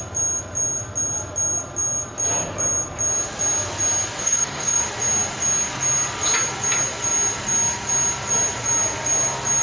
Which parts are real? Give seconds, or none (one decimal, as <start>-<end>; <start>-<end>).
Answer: 0.0-4.2; 4.8-9.6